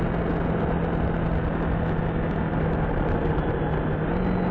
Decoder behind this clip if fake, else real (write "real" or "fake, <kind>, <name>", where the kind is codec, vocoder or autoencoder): real